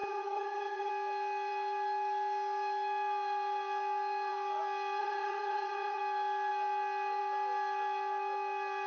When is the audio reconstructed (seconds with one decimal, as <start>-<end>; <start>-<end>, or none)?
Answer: 0.0-0.9; 5.0-6.0